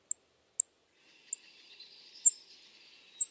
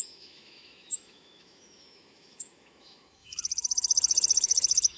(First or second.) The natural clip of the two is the first